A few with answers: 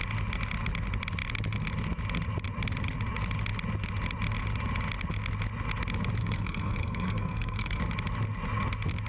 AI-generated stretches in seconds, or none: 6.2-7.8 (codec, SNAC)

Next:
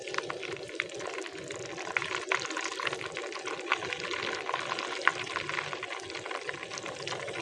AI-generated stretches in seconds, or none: none

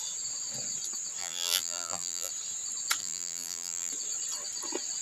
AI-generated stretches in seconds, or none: 1.2-2.3 (vocoder, BigVGAN v2); 3.0-3.9

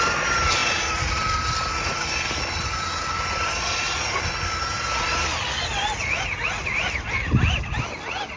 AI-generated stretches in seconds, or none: none

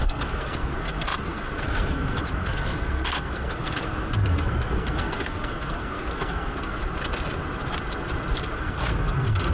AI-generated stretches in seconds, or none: 0.0-6.8 (codec, SNAC); 8.5-9.5

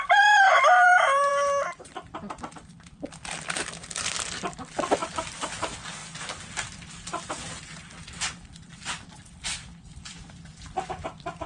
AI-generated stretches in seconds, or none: 0.0-1.3 (vocoder, BigVGAN v2); 1.9-6.0; 6.5-11.5